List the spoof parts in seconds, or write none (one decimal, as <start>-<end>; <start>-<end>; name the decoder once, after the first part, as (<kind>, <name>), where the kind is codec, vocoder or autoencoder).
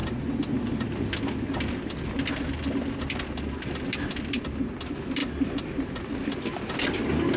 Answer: none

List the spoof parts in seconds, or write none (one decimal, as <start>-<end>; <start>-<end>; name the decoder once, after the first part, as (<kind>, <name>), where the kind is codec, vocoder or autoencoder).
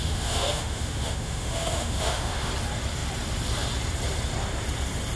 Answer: 0.0-2.5 (autoencoder, DAC-VAE)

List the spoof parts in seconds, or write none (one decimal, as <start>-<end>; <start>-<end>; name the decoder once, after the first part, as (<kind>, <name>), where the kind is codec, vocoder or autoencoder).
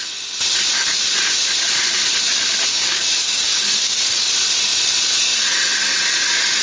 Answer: 2.7-4.3 (codec, DAC)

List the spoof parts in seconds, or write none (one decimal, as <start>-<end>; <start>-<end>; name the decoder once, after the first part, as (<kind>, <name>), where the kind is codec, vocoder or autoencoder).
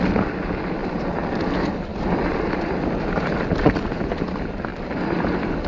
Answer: 4.7-5.3 (vocoder, BigVGAN v2)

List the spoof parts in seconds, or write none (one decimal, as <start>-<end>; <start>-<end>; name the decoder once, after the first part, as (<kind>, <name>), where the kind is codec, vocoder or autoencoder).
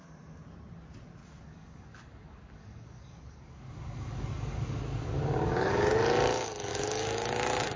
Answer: 1.2-5.9 (codec, DAC); 6.7-7.8